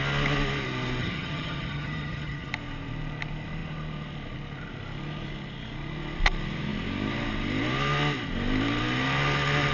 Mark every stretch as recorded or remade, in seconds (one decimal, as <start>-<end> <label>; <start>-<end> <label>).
0.0-1.0 recorded; 1.0-2.5 remade; 2.5-9.7 recorded